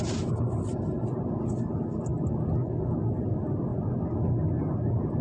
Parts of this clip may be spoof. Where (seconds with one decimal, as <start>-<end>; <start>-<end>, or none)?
0.0-2.1; 3.2-3.7; 4.6-5.2